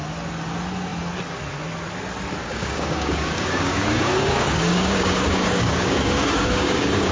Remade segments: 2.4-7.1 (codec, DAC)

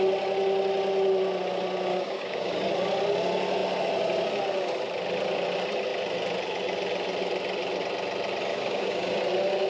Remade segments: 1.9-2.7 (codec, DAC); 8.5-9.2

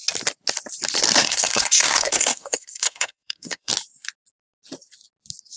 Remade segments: 1.2-3.7 (codec, SNAC)

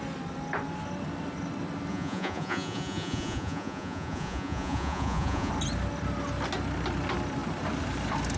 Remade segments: 1.9-5.5 (vocoder, Vocos)

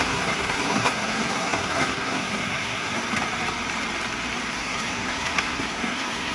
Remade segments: 0.0-3.0 (codec, SNAC); 4.5-6.3

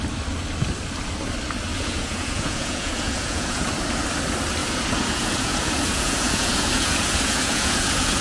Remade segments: 1.7-3.7 (vocoder, Vocos); 4.6-8.2

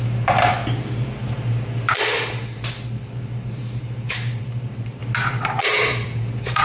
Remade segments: 0.0-0.6 (vocoder, BigVGAN v2); 2.7-5.0; 5.6-6.6